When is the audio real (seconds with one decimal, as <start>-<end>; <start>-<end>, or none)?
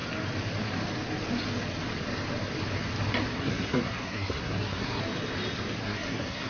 0.0-3.3; 5.0-5.8